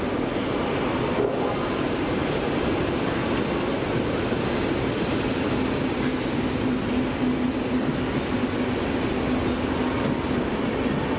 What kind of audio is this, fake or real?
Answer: real